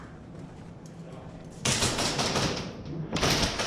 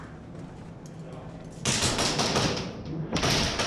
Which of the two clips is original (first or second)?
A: second